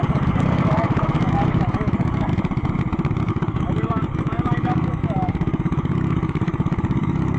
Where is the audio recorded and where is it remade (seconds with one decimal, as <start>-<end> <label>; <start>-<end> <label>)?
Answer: 0.0-2.3 remade; 2.3-3.3 recorded; 3.3-7.4 remade